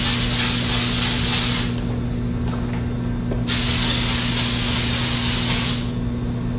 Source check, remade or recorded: recorded